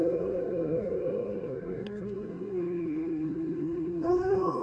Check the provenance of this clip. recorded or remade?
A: remade